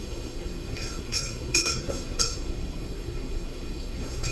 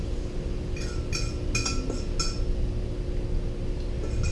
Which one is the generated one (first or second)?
first